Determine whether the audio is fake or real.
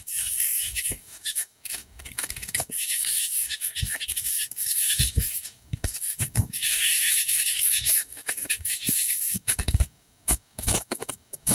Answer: fake